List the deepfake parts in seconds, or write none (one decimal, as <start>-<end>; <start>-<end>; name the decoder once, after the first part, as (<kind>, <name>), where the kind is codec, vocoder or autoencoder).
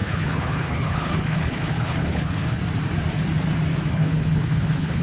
0.0-2.6 (codec, HILCodec); 3.9-5.0